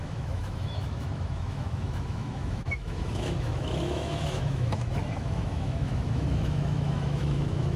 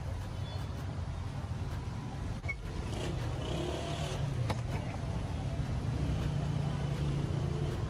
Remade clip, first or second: first